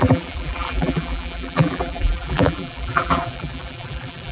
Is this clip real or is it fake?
fake